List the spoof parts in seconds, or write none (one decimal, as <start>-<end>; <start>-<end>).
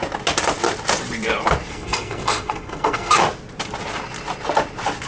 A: 1.7-3.2